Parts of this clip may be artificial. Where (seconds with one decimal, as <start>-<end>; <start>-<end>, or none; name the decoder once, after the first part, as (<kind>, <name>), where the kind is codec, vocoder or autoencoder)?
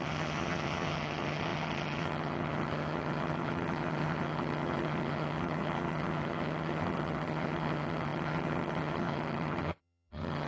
0.0-10.5 (vocoder, HiFi-GAN)